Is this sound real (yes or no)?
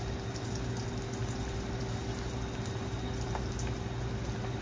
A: yes